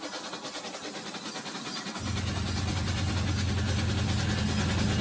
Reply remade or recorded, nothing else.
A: recorded